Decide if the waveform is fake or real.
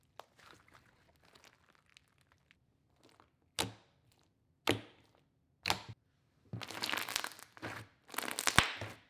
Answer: real